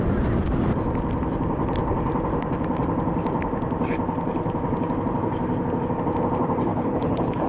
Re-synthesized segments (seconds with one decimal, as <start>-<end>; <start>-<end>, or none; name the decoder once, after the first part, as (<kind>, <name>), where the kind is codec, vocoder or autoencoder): 6.7-7.5 (codec, HILCodec)

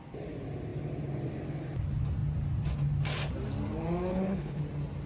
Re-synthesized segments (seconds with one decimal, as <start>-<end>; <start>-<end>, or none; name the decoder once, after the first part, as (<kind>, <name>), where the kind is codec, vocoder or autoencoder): 4.1-4.6 (codec, HILCodec)

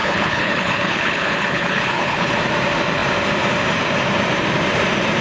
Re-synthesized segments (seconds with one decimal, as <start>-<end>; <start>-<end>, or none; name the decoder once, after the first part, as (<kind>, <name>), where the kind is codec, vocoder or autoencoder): 0.0-2.4 (codec, HILCodec)

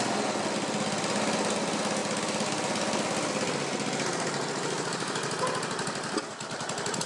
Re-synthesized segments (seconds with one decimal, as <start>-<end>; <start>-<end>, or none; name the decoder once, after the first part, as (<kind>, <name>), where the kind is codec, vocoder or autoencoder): none

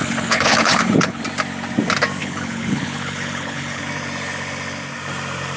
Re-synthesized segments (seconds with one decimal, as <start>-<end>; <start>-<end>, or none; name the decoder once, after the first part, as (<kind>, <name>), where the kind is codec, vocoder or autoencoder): 0.0-1.2 (codec, HILCodec); 2.2-3.8

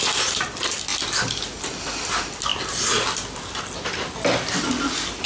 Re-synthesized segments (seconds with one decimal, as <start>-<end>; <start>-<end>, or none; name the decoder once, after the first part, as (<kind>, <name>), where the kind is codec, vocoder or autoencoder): none

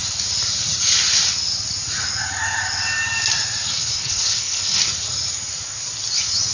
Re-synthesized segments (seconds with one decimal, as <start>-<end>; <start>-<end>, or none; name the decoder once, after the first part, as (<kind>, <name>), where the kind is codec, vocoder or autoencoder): 3.8-4.8 (codec, HILCodec)

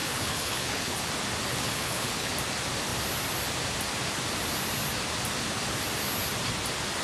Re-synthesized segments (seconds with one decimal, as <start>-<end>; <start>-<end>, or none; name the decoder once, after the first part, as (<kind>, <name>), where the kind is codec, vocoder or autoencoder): 0.0-1.1 (codec, HILCodec); 1.5-2.3